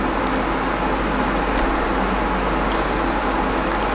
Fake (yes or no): no